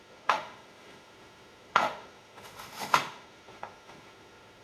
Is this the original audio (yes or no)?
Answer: no